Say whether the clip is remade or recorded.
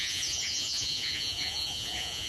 remade